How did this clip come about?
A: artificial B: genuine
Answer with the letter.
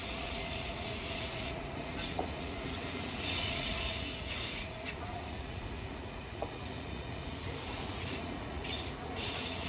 A